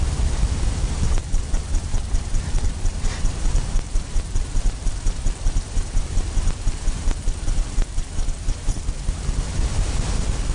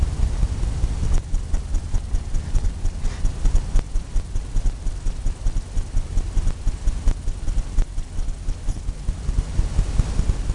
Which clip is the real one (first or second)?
second